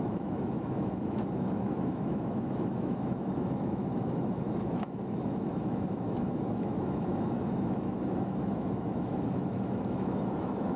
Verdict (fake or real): fake